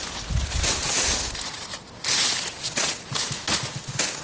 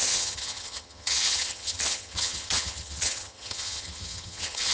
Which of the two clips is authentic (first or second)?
first